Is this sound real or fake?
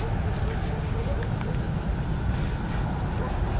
real